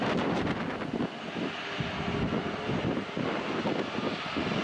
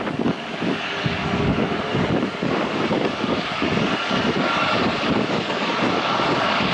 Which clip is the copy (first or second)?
second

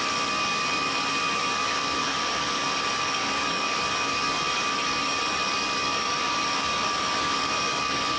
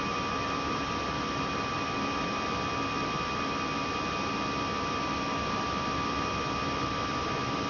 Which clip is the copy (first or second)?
first